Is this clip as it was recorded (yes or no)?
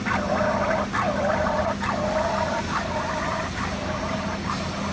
yes